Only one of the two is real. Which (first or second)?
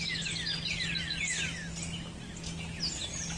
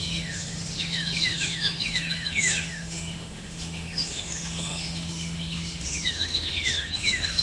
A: first